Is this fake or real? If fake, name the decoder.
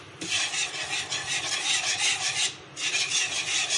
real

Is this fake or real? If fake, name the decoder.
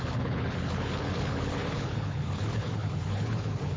fake, codec, HILCodec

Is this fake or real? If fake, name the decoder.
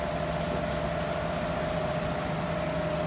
real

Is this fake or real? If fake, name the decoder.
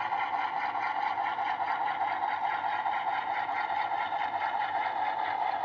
real